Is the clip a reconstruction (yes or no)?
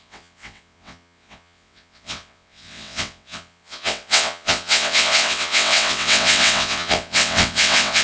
yes